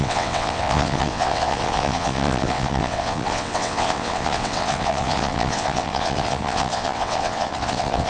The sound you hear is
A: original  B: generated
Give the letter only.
B